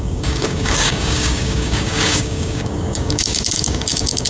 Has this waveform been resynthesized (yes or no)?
yes